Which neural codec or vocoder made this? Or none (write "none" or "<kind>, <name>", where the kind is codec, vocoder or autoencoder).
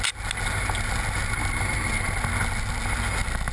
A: none